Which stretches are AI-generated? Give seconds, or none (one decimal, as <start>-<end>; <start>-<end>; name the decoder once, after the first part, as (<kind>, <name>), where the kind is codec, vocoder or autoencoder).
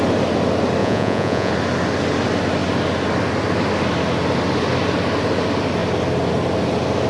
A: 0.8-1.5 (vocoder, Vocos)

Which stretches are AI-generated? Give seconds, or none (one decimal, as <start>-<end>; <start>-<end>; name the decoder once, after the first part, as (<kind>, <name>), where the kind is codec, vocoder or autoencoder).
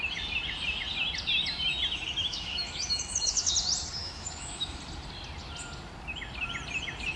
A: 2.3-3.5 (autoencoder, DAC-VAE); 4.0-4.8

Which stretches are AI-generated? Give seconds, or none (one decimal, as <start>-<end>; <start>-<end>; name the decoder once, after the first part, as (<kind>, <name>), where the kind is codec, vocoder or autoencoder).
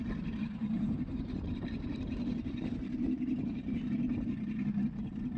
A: 0.6-3.8 (vocoder, BigVGAN v2)